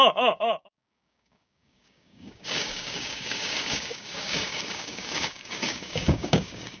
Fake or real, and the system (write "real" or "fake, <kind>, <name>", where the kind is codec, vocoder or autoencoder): fake, codec, DAC